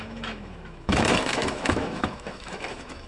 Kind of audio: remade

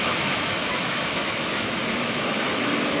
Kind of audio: remade